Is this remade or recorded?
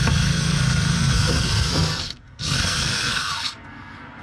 remade